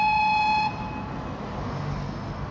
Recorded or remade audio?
recorded